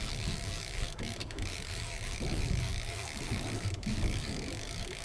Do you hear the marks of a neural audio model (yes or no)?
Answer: yes